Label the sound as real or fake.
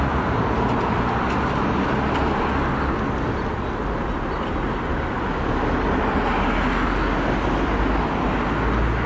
real